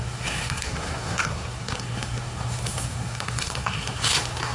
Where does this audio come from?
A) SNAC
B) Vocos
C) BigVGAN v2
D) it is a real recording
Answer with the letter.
A